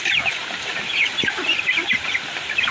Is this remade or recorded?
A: remade